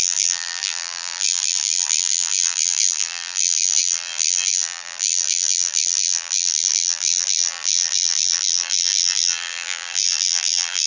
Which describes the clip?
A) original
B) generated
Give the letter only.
B